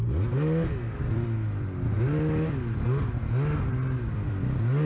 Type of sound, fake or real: real